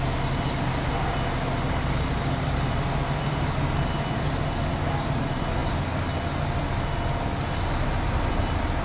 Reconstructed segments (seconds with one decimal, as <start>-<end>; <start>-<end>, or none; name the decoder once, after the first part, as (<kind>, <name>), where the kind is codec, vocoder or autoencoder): none

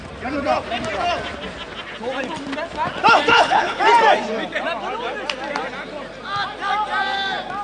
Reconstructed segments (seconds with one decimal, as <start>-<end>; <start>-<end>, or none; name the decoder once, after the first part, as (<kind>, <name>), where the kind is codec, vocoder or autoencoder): 3.3-3.8 (codec, HILCodec)